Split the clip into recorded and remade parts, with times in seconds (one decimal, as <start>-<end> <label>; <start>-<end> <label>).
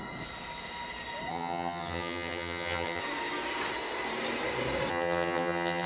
0.0-1.3 recorded; 1.3-3.0 remade; 3.0-4.9 recorded; 4.9-5.9 remade